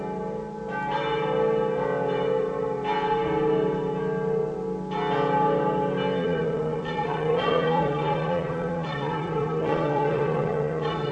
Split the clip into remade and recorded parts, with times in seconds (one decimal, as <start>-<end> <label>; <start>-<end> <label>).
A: 0.0-6.2 recorded; 6.2-11.1 remade